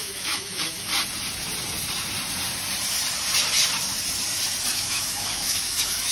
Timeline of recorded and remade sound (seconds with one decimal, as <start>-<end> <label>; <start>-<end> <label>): 0.0-0.9 remade; 0.9-4.6 recorded; 4.6-6.1 remade

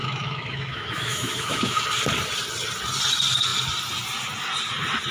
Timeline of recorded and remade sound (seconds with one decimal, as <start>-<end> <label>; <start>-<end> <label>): 0.0-1.8 remade; 1.8-5.1 recorded

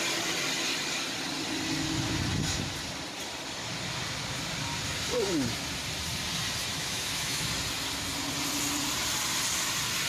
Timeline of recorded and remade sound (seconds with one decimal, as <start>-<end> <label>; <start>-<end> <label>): 0.0-6.7 recorded; 6.7-7.5 remade; 7.5-10.1 recorded

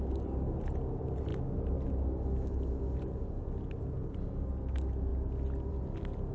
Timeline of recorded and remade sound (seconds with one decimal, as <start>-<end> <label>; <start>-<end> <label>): 0.0-6.3 recorded

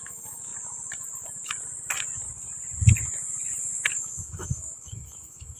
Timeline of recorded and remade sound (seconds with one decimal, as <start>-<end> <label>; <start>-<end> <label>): 0.0-0.5 remade; 0.5-3.9 recorded; 3.9-5.6 remade

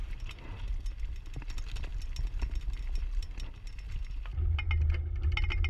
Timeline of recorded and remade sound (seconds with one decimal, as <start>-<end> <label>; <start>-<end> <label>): 0.0-5.7 recorded